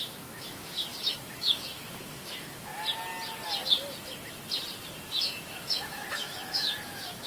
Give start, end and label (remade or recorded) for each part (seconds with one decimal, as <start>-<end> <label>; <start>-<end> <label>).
0.0-2.7 remade; 2.7-5.2 recorded; 5.2-7.3 remade